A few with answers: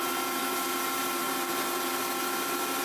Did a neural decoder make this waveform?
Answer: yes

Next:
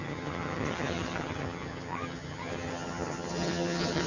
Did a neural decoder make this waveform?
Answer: yes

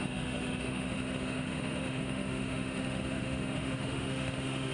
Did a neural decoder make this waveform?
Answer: yes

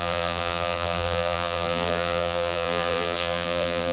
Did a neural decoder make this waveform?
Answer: yes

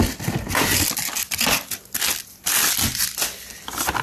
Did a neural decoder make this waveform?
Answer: no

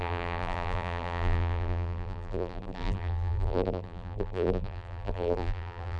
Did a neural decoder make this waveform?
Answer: yes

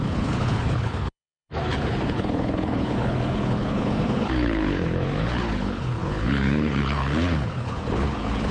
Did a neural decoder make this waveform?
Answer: yes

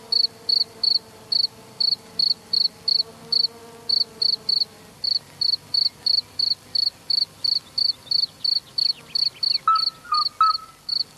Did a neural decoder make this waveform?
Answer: no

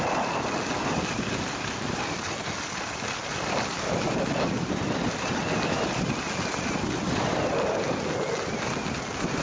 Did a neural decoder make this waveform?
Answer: no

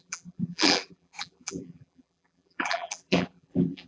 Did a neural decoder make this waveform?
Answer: yes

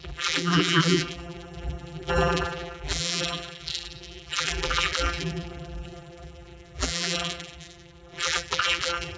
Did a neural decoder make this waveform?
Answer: yes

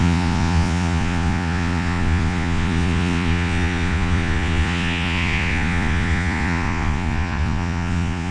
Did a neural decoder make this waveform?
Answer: yes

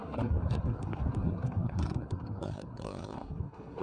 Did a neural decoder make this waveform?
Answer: yes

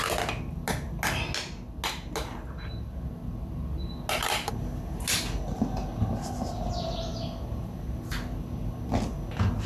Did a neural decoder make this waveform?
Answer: no